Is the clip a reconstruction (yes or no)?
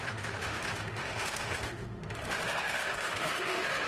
yes